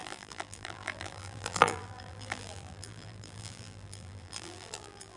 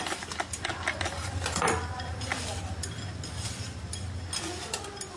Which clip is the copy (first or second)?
first